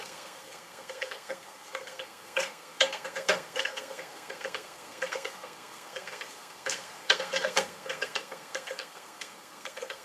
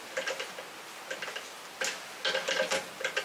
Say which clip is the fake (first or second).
first